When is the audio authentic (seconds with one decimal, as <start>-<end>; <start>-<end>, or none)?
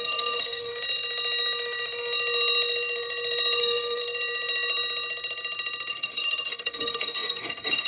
0.7-3.6; 4.0-5.9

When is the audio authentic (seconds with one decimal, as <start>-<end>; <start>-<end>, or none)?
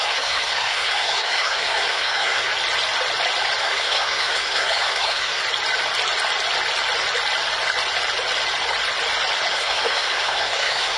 2.5-3.6; 5.4-9.5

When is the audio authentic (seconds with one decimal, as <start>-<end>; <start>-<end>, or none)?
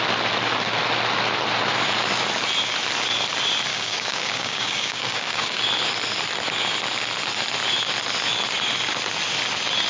0.0-3.7; 5.6-9.9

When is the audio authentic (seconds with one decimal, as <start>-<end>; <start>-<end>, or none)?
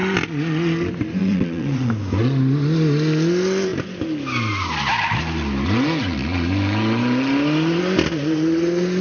0.0-1.2; 1.9-9.0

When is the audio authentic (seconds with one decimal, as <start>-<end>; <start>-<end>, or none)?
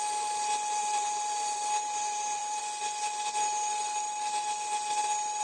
0.0-0.8; 2.6-5.4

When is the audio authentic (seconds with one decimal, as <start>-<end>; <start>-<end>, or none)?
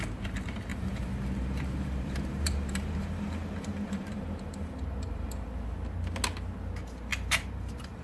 0.0-0.7; 5.5-7.1